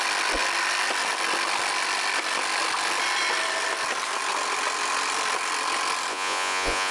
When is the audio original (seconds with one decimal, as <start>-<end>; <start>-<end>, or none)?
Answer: 0.0-6.1